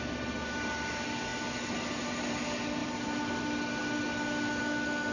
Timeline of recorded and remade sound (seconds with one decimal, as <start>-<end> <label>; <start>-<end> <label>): 0.0-2.8 recorded; 2.8-3.3 remade; 3.3-5.1 recorded